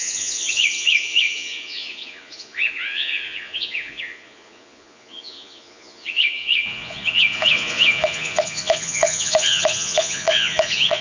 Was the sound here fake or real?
fake